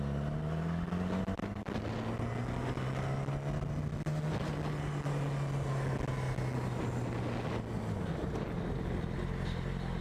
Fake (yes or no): no